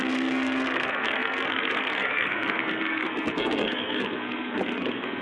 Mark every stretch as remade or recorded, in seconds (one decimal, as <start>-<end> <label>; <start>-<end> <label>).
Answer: 0.0-5.2 remade